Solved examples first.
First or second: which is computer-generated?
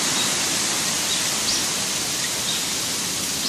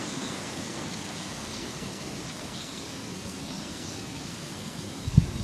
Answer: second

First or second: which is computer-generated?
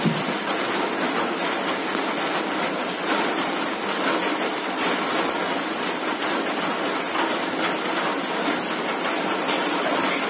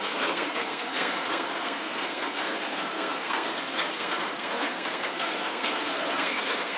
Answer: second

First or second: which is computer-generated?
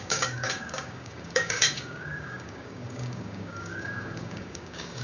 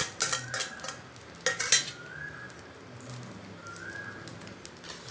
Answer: first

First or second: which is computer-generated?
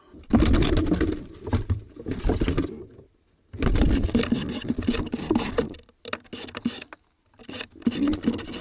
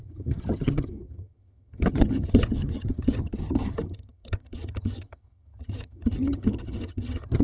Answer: second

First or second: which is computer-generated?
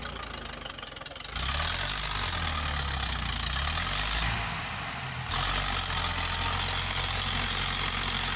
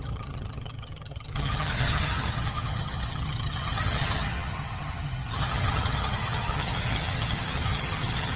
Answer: second